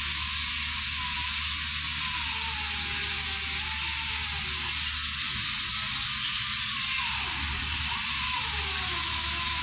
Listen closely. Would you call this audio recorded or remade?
recorded